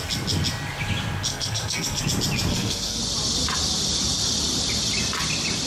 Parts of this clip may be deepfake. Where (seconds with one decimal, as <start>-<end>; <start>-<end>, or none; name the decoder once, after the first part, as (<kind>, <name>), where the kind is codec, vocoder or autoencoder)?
1.3-2.0 (codec, SNAC); 2.5-3.0